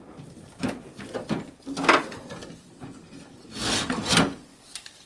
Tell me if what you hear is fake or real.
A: real